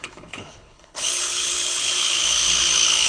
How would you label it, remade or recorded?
remade